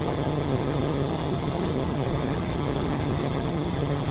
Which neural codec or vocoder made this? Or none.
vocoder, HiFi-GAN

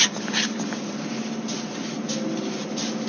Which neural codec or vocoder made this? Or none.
none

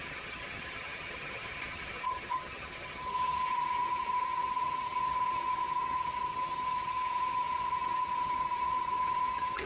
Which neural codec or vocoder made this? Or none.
vocoder, HiFi-GAN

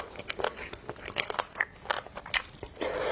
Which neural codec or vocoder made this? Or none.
none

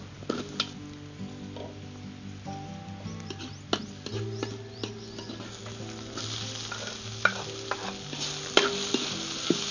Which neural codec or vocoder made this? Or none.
none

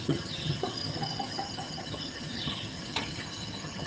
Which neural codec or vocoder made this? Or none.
vocoder, HiFi-GAN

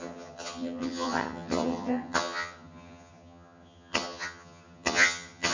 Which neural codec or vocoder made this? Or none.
vocoder, HiFi-GAN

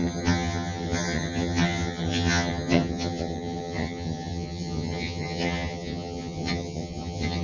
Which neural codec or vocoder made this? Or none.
vocoder, HiFi-GAN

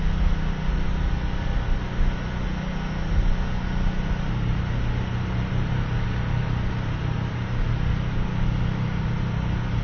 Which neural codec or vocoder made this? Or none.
none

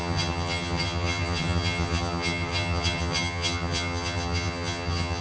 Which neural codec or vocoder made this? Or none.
vocoder, HiFi-GAN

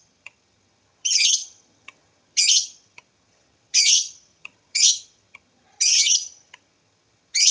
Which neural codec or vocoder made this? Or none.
vocoder, HiFi-GAN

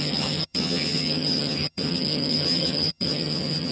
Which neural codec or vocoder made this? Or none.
vocoder, HiFi-GAN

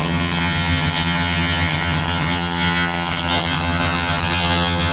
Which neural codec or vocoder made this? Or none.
vocoder, HiFi-GAN